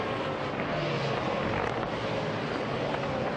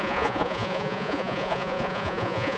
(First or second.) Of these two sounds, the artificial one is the second